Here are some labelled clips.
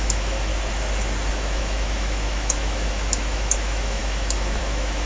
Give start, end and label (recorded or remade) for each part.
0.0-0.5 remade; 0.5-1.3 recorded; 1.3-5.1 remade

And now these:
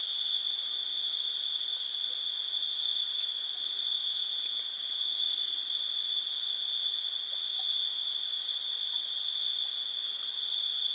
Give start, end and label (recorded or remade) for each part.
0.0-4.0 recorded; 4.0-4.7 remade; 4.7-10.9 recorded

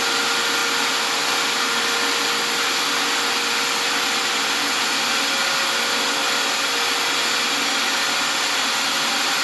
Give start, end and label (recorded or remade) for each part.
0.0-9.4 recorded